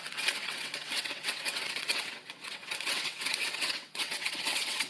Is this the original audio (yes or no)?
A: no